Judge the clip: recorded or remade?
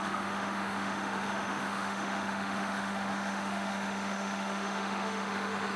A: remade